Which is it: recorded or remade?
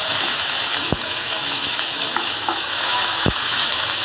remade